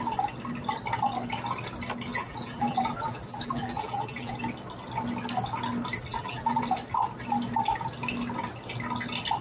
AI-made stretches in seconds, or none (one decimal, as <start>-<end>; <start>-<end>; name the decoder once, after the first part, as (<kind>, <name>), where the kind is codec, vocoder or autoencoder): 2.1-4.4 (vocoder, BigVGAN v2); 6.1-6.6